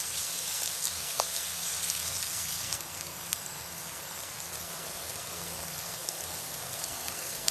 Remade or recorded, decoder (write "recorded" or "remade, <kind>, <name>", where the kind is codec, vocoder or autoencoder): remade, codec, SNAC